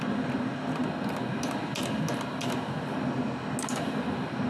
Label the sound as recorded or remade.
recorded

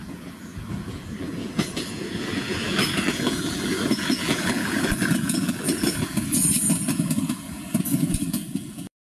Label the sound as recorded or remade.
remade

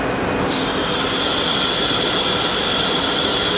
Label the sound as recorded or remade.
recorded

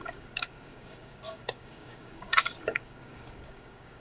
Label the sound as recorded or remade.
remade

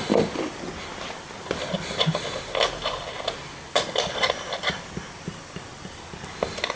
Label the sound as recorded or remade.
recorded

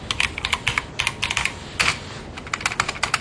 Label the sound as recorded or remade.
recorded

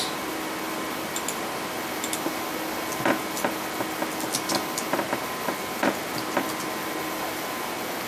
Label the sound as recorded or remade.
recorded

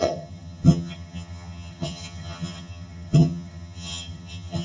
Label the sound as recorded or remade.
remade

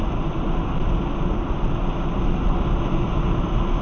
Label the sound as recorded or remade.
recorded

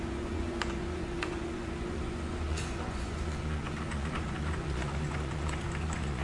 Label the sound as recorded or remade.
remade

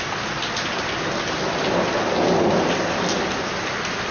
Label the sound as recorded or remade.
recorded